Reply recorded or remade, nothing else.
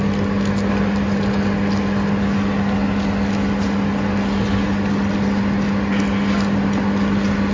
recorded